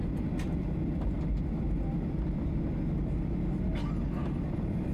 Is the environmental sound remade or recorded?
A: recorded